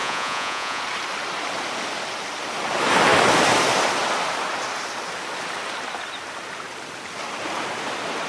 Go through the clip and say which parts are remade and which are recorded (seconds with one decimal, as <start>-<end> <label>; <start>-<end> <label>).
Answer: 0.0-0.8 remade; 0.8-8.3 recorded